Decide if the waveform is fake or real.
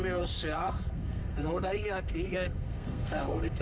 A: fake